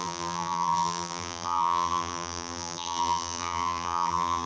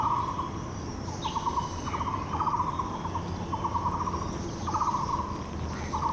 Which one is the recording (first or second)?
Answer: second